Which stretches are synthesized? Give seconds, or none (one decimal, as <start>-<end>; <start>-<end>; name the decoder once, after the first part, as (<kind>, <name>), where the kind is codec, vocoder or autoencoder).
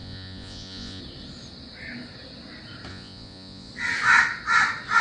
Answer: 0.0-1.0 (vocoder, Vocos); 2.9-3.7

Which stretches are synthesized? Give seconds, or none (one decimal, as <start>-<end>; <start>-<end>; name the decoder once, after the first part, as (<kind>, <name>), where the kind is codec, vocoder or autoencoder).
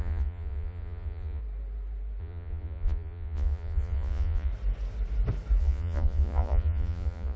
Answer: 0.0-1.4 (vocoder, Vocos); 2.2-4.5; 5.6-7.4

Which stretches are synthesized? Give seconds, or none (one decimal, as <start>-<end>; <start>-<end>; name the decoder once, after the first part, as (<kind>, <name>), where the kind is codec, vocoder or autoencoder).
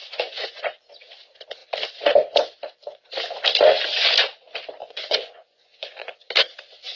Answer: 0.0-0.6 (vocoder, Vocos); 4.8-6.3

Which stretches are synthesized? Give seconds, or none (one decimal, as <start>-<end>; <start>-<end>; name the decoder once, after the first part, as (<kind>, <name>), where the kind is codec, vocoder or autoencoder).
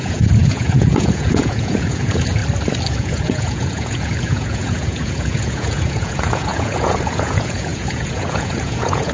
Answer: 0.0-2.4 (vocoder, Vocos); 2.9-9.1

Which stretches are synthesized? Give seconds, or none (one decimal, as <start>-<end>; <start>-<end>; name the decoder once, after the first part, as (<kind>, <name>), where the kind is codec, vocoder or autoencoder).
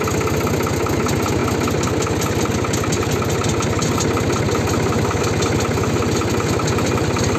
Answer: none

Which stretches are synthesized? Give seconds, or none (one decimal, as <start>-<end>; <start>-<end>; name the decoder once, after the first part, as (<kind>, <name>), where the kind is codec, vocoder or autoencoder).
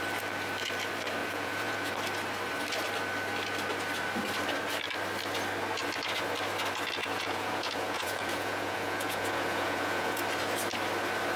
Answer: 1.2-1.9 (vocoder, Vocos); 7.0-10.2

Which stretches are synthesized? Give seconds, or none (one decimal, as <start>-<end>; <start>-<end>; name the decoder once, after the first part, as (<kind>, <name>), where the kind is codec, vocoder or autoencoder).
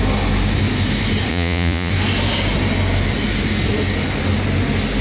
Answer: 1.3-1.9 (vocoder, Vocos)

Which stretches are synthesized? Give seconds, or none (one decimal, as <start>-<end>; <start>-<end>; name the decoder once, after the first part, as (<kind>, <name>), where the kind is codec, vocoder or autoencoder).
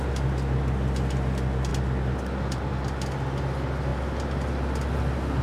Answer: none